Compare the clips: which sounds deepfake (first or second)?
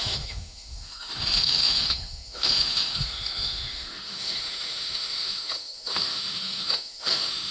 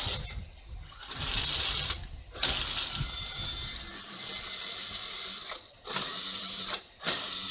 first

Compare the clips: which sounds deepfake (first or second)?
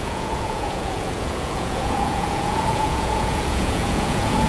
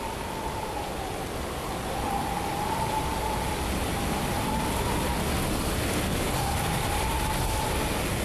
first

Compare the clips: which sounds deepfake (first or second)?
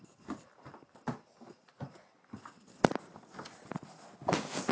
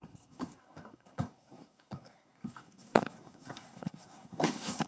second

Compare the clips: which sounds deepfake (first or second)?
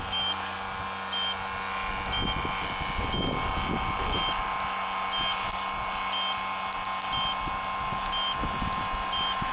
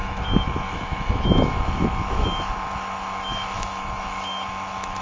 second